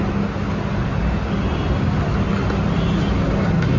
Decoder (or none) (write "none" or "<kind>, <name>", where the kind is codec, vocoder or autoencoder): none